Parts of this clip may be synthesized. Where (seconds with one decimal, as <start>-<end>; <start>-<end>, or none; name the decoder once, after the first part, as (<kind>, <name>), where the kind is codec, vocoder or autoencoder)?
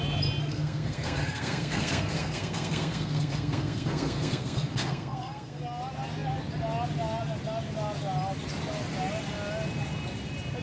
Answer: 0.4-5.6 (codec, SNAC)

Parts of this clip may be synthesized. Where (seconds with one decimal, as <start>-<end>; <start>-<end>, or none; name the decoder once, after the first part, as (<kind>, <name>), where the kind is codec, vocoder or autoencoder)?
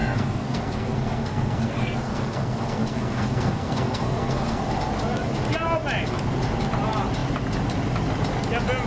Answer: 0.0-4.6 (codec, SNAC)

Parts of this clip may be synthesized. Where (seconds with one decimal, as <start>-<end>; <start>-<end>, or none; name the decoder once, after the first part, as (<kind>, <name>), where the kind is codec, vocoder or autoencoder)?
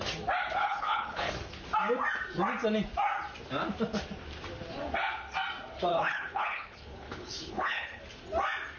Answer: 0.6-1.3 (codec, HILCodec); 5.9-8.0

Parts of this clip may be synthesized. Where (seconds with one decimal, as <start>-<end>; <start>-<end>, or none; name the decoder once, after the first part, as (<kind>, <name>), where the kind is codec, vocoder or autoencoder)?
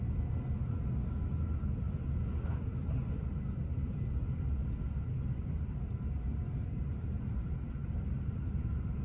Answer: 6.6-9.0 (vocoder, BigVGAN v2)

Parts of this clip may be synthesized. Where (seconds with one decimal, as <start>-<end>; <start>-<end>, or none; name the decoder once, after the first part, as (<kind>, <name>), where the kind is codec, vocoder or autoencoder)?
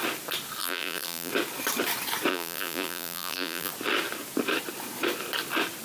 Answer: 0.6-1.3 (vocoder, BigVGAN v2); 2.3-3.7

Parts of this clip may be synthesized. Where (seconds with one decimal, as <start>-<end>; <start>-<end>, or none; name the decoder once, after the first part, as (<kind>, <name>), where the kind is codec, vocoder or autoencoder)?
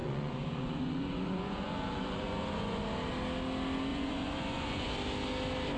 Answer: 0.0-2.8 (vocoder, Vocos); 3.9-4.9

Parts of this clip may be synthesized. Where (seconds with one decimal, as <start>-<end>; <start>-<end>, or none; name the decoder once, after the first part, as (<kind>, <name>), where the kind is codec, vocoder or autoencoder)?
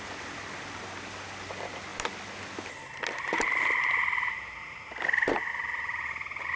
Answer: none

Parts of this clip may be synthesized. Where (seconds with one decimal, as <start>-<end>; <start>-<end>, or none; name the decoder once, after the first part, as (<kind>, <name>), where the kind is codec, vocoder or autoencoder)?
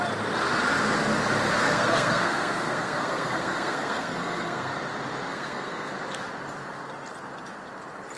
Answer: 1.6-4.7 (codec, SNAC); 5.3-5.9